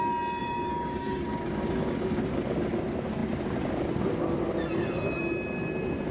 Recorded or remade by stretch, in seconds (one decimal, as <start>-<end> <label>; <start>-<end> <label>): 0.0-0.4 recorded; 0.4-2.2 remade; 2.2-6.1 recorded